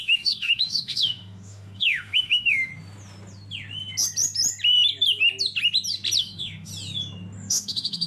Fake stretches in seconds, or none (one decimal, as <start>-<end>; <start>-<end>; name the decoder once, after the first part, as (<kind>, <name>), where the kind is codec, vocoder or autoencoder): 0.0-2.7 (autoencoder, DAC-VAE); 6.2-6.7; 7.5-8.1